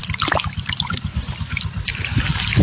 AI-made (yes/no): yes